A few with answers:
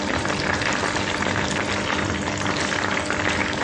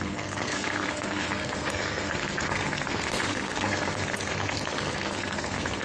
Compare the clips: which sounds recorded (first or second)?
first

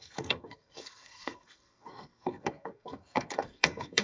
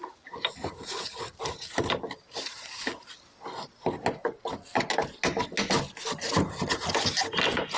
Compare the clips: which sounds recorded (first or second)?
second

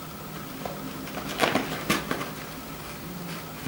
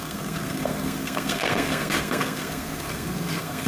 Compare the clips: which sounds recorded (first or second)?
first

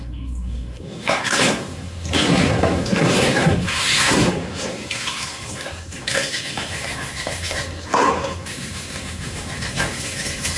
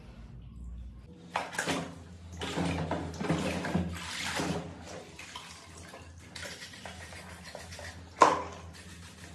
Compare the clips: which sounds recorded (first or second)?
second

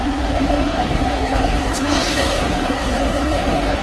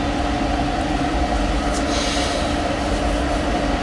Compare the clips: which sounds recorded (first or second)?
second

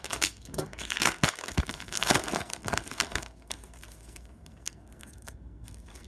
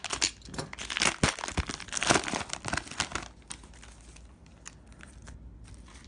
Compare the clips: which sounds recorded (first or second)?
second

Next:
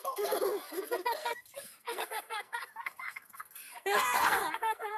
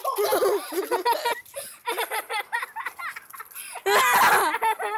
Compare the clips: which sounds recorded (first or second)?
second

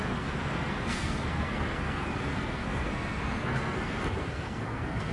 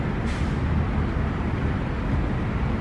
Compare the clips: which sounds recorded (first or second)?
second